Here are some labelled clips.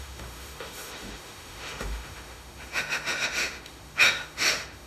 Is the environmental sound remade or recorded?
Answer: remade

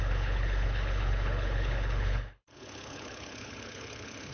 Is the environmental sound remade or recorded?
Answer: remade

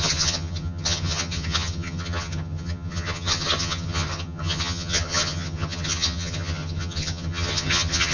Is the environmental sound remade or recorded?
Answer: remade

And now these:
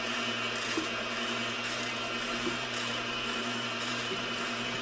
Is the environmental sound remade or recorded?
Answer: remade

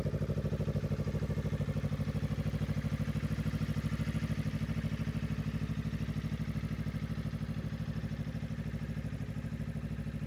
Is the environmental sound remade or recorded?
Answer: recorded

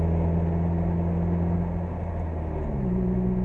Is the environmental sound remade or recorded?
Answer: recorded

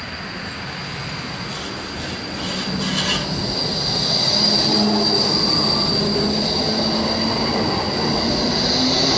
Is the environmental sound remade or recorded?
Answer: recorded